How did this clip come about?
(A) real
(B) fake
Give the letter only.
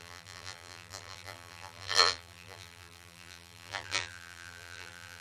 B